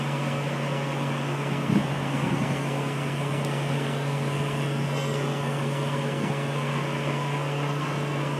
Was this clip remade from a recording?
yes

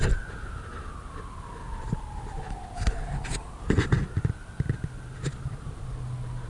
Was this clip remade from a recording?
no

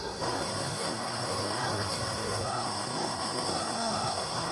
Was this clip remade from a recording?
yes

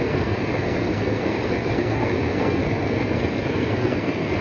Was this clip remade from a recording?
yes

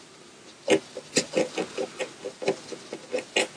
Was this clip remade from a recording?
no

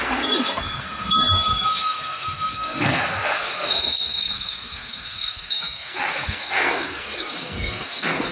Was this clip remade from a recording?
yes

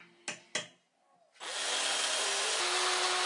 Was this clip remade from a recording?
no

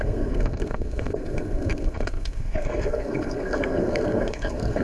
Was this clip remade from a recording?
yes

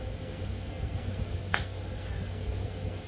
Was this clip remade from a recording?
yes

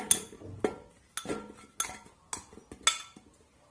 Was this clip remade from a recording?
no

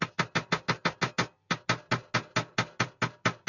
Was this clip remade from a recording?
no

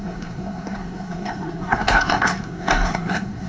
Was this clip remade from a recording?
yes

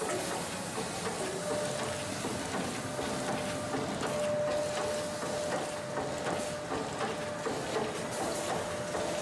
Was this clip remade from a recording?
no